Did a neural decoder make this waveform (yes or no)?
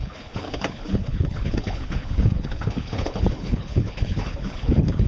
yes